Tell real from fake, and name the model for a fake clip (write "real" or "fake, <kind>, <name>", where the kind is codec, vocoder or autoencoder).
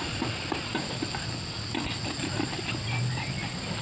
real